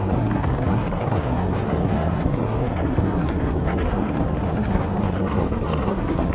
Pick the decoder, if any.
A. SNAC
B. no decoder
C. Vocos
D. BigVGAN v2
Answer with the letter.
A